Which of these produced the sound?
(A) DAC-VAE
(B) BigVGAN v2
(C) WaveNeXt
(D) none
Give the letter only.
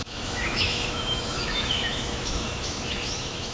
A